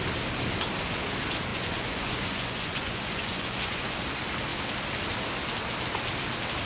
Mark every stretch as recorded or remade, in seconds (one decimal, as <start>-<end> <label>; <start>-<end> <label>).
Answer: 0.0-1.5 recorded; 1.5-4.0 remade; 4.0-6.7 recorded